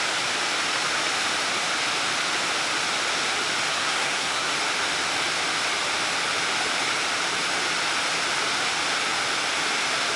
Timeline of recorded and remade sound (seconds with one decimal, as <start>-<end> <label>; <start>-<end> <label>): 0.0-3.7 recorded; 3.7-4.5 remade; 4.5-10.2 recorded